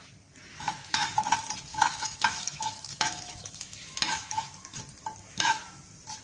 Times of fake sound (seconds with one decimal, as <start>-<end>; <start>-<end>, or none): 0.5-1.1; 1.7-4.8; 5.3-5.8

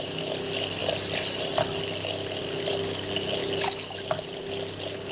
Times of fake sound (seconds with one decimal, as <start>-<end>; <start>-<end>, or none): none

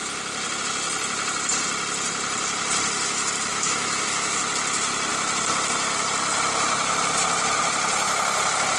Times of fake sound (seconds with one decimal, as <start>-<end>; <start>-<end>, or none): 3.5-4.4

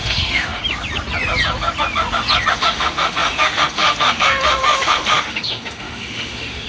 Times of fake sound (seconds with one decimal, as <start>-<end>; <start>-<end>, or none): 0.0-0.6; 2.5-6.7

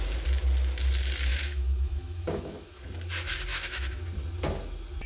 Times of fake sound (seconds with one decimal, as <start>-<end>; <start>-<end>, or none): 1.3-2.8; 3.5-4.0

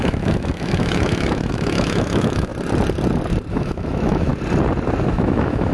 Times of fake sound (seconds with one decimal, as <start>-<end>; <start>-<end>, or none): 0.0-2.5; 3.5-4.3; 5.0-5.7

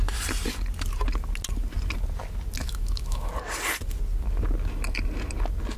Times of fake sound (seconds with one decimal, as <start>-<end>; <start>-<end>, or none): 2.6-3.3